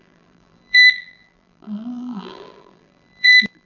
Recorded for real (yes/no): no